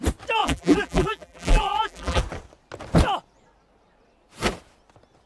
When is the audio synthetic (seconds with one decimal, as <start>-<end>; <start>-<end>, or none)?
0.4-2.2